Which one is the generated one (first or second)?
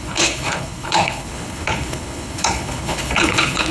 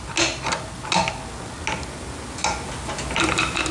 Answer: first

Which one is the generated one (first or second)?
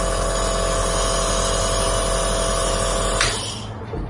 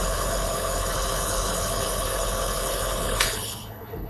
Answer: second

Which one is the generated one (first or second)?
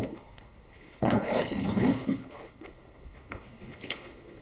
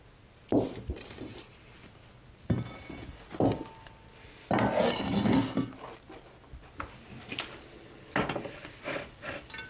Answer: first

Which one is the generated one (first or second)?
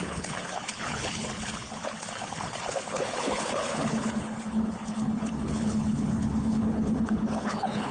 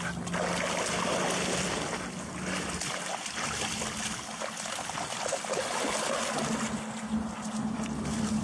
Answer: first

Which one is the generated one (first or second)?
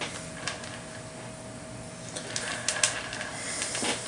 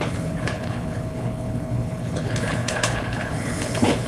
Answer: second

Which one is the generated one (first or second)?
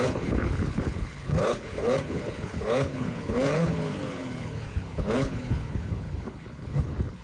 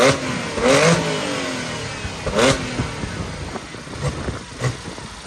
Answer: first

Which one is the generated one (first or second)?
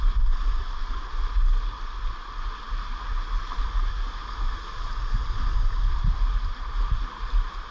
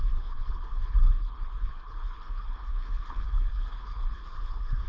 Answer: second